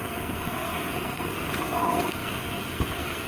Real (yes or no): no